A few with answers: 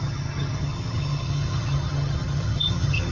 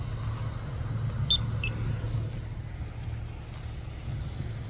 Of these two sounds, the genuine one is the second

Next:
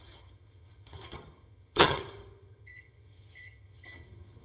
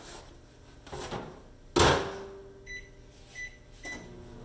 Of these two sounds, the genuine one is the second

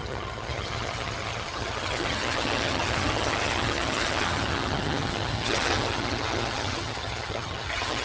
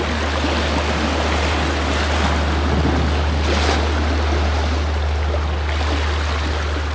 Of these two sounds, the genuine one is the second